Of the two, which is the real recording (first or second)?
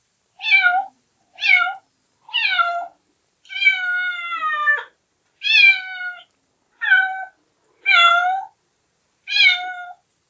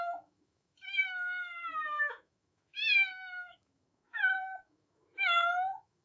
first